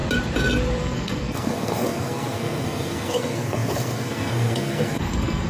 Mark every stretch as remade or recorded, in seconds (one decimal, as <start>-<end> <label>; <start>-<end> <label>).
0.0-0.8 recorded; 0.8-5.5 remade